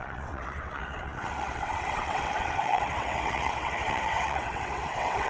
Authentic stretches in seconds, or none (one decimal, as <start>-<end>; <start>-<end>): none